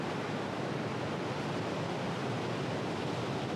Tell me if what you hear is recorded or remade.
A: recorded